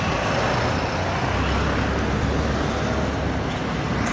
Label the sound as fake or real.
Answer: real